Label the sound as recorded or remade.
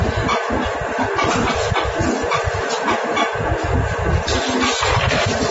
recorded